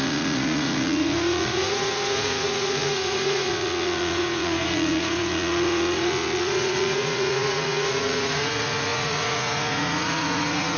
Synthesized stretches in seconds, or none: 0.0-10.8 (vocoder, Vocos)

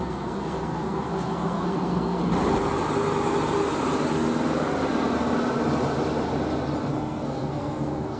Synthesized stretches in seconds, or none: 0.0-2.2 (codec, SNAC); 6.9-8.2

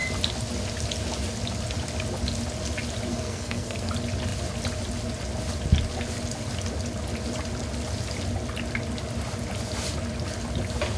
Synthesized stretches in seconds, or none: 3.1-3.9 (codec, SNAC)

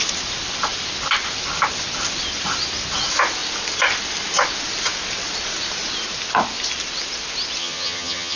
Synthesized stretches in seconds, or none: 7.6-8.4 (vocoder, HiFi-GAN)

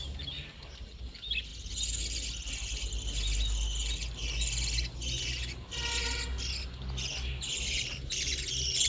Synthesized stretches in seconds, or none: none